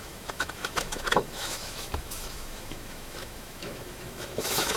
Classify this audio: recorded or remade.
remade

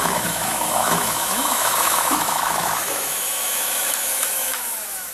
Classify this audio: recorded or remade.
remade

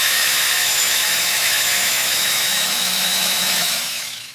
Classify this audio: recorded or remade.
remade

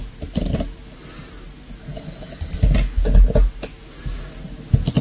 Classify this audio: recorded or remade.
recorded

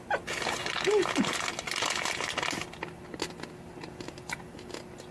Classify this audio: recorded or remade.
recorded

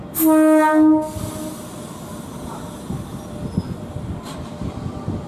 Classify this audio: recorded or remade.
recorded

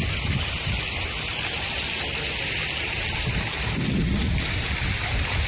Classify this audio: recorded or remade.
recorded